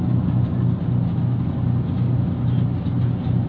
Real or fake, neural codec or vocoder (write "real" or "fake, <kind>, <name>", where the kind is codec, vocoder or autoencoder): real